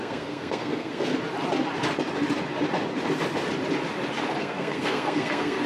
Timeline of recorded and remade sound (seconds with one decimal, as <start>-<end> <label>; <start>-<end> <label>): 0.0-1.1 remade; 1.1-4.4 recorded; 4.4-5.7 remade